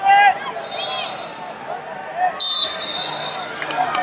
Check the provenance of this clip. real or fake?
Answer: real